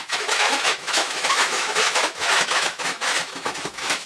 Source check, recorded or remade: remade